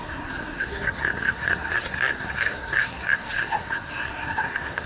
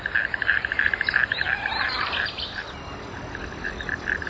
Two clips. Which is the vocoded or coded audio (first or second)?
first